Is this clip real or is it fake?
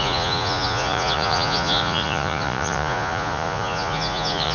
fake